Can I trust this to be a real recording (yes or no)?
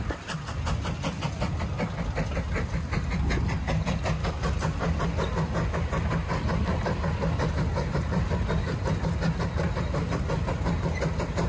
yes